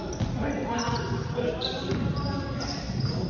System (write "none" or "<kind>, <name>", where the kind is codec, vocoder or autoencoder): none